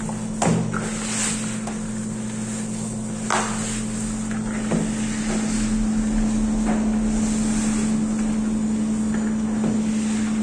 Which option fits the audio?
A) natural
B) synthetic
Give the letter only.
A